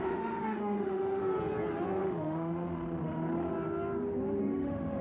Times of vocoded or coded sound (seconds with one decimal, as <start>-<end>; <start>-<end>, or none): 0.0-1.2; 2.0-3.5; 4.4-5.0